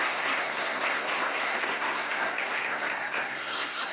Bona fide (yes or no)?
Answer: no